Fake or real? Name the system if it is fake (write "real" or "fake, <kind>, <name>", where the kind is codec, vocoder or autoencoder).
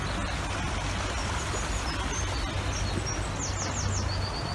real